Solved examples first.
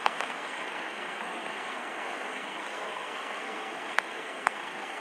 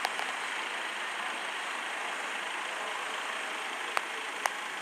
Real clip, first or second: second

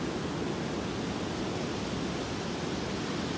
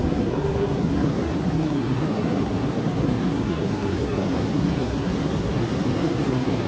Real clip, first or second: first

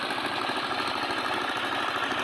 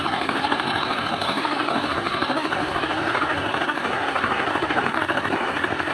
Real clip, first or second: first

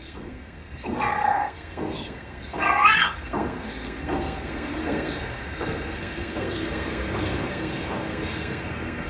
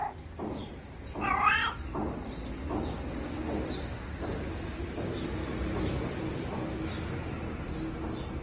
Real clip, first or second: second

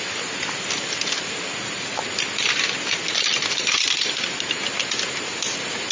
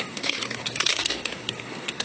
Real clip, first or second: first